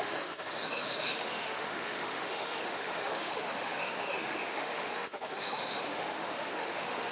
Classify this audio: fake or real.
fake